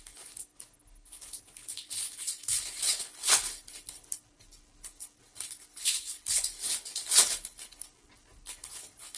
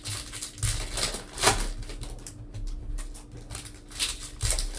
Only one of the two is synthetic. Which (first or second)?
first